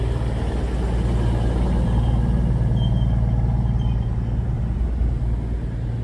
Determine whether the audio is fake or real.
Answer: real